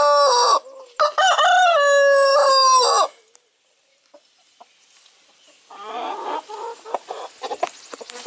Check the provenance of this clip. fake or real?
real